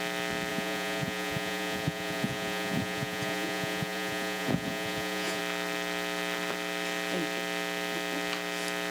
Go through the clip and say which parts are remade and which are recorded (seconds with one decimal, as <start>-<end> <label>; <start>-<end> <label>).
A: 0.0-0.5 recorded; 0.5-5.4 remade; 5.4-8.9 recorded